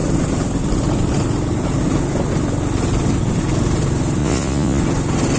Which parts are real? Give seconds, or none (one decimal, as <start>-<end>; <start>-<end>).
0.0-4.2; 4.8-5.4